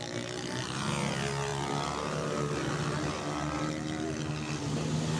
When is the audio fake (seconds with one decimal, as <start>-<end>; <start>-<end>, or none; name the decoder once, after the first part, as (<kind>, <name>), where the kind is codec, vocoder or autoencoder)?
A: none